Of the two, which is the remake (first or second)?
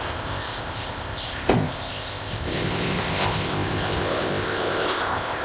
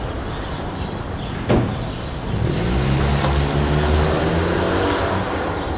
first